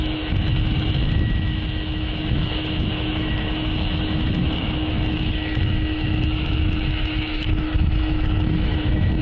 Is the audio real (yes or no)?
no